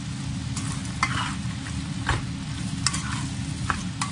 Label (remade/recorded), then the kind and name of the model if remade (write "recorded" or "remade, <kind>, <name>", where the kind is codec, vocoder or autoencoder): recorded